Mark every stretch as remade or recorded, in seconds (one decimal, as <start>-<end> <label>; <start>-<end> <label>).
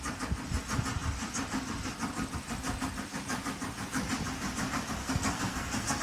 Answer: 0.0-5.0 recorded; 5.0-6.0 remade